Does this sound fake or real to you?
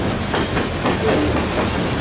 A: real